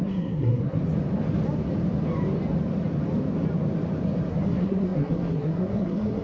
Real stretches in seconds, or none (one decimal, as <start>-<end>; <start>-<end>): 0.8-4.3